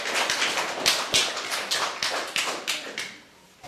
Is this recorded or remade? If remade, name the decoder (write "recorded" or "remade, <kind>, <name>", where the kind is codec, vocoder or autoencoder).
recorded